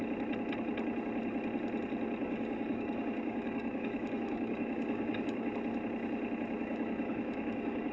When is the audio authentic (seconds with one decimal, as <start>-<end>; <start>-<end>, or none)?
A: 0.0-2.2; 5.5-6.6